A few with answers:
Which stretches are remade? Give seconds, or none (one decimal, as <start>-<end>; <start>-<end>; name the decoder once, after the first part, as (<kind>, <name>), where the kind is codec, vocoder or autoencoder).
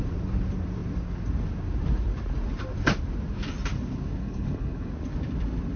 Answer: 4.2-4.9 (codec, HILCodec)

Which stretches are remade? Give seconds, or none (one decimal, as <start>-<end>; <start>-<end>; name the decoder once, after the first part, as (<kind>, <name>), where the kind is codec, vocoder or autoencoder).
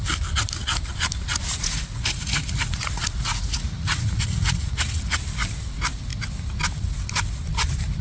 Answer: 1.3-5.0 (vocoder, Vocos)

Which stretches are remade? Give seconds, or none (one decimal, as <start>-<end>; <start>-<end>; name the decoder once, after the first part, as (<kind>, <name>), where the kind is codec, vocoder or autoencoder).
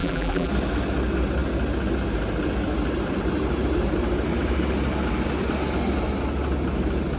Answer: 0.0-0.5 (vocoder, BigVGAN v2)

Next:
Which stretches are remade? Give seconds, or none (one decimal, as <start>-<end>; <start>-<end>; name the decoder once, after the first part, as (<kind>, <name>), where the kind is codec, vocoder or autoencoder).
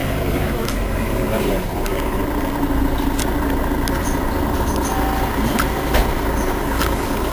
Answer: 0.0-2.2 (codec, DAC); 6.6-7.3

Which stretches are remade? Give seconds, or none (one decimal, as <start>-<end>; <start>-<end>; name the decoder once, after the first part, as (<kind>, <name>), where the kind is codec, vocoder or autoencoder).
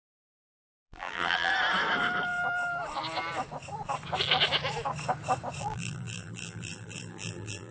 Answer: 0.0-1.5 (vocoder, BigVGAN v2); 5.6-7.7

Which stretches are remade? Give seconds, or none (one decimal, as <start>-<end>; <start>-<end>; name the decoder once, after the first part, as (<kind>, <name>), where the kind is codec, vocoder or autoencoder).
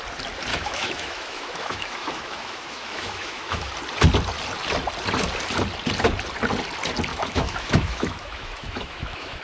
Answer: 0.5-3.7 (autoencoder, DAC-VAE); 7.1-9.4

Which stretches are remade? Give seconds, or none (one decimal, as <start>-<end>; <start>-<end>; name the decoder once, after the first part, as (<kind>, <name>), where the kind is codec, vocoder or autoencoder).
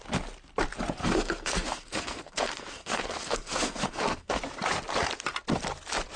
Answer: 1.0-4.4 (codec, SNAC)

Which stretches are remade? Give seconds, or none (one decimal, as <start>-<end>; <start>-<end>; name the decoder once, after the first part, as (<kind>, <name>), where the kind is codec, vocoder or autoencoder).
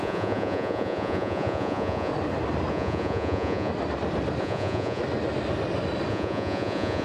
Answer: 0.0-2.1 (vocoder, Vocos); 2.7-3.7; 4.4-5.0; 6.1-7.0